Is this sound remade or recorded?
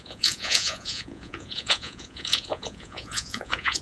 remade